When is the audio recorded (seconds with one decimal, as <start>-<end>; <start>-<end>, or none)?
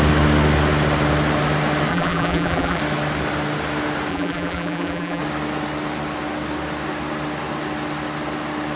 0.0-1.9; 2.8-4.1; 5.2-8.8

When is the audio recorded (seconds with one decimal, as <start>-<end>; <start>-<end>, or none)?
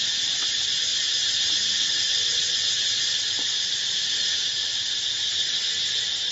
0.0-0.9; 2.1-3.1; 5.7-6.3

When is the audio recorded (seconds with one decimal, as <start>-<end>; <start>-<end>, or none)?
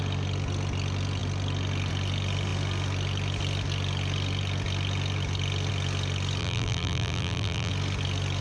0.0-6.4; 7.7-8.4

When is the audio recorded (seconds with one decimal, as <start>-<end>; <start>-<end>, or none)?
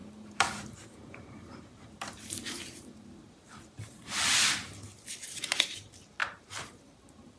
4.4-6.2; 6.8-7.4